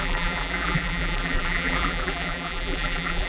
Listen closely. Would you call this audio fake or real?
fake